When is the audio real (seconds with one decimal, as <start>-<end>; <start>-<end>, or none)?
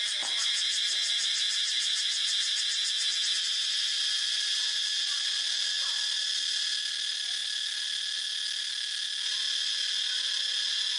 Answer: 0.0-11.0